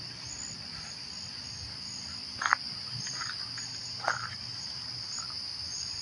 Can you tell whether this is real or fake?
real